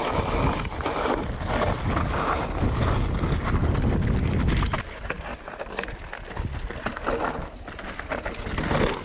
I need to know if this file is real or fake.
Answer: real